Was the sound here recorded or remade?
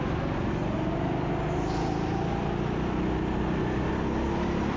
recorded